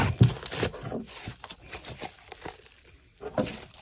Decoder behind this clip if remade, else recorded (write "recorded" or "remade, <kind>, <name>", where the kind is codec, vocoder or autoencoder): remade, vocoder, BigVGAN v2